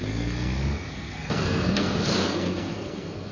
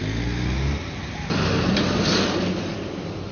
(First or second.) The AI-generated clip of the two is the first